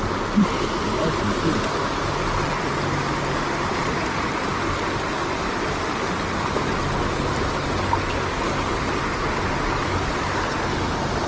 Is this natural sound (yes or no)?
yes